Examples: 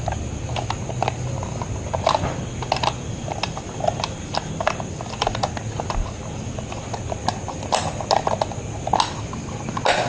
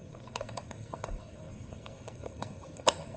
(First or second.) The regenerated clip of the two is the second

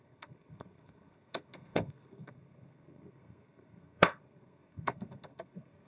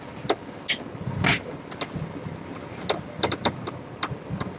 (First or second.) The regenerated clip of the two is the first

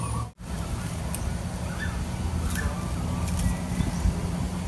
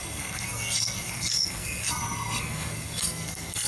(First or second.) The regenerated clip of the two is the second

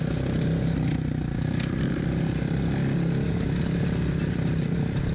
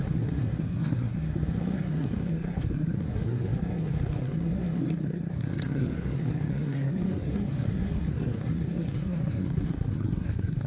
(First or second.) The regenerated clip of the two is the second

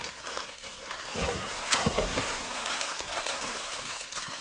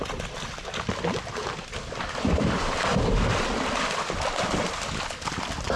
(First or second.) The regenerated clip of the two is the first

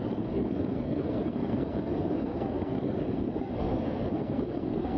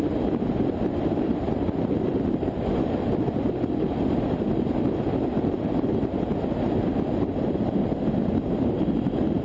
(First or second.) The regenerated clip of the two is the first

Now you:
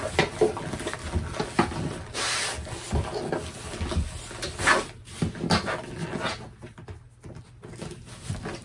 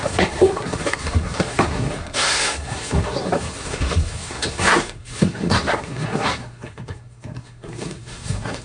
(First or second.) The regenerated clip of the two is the second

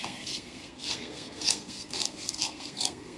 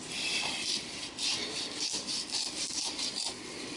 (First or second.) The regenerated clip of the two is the first